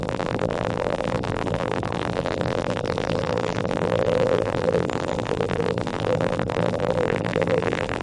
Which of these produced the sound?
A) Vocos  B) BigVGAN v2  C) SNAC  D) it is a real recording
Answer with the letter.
B